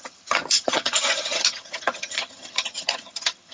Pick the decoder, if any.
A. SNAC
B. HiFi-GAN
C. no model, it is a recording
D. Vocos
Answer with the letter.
B